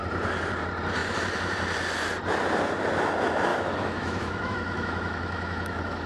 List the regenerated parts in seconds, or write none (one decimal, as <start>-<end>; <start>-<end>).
3.5-6.1